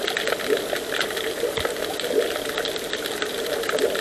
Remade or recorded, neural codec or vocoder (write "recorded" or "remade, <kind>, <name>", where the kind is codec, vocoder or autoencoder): recorded